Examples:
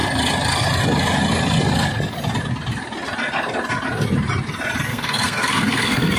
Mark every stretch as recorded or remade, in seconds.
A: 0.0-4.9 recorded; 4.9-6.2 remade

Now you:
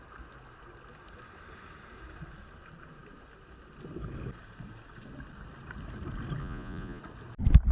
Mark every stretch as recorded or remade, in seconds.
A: 0.0-6.4 recorded; 6.4-7.0 remade; 7.0-7.7 recorded